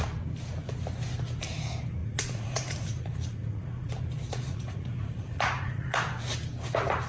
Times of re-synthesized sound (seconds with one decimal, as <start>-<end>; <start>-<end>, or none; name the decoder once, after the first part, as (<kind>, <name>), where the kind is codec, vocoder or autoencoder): 2.0-3.9 (vocoder, Vocos); 4.3-6.0